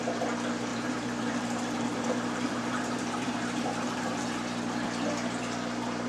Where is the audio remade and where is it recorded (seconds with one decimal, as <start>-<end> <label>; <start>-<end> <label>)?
0.0-0.7 recorded; 0.7-4.4 remade; 4.4-6.1 recorded